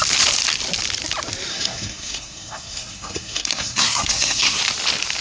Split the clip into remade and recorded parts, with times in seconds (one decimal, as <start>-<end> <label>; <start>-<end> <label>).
0.0-1.5 recorded; 1.5-4.6 remade; 4.6-5.2 recorded